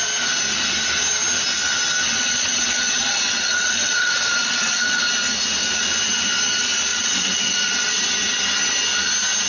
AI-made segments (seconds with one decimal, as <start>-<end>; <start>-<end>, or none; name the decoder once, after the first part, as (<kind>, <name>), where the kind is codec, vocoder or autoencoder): 2.1-5.0 (vocoder, WaveNeXt); 6.9-8.0